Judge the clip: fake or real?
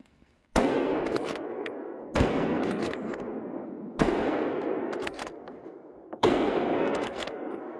fake